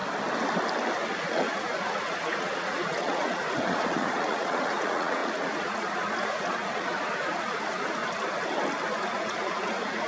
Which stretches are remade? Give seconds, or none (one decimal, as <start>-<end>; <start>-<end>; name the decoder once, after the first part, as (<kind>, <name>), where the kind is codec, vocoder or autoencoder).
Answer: 1.2-8.0 (vocoder, Vocos); 9.0-10.1

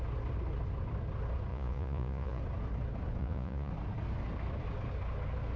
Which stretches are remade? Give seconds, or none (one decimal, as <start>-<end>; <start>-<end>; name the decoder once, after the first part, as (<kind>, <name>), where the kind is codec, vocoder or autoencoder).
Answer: 1.5-2.4 (vocoder, Vocos); 3.2-3.7

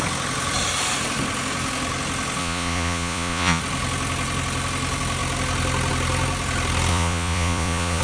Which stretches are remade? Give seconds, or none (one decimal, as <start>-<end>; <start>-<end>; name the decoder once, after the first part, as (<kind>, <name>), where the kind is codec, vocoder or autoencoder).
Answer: 2.4-3.6 (vocoder, Vocos); 6.9-8.0

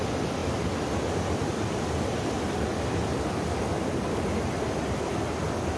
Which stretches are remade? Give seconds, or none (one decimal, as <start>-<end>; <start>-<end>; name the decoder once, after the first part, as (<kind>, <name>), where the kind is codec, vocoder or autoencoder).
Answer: none

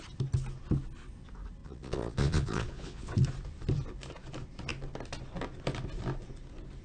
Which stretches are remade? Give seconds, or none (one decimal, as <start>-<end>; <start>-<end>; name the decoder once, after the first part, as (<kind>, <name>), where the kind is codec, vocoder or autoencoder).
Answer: 1.6-3.2 (vocoder, Vocos)

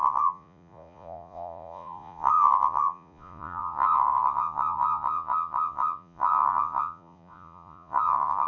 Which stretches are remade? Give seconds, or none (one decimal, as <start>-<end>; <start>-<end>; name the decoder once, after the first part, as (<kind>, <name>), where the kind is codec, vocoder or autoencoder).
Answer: 0.0-8.5 (vocoder, Vocos)

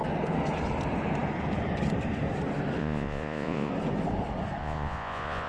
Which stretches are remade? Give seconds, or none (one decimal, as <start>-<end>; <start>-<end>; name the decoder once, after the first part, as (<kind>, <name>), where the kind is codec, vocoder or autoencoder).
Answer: 2.8-3.7 (vocoder, Vocos); 4.6-5.5